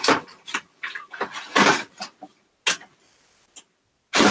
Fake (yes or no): no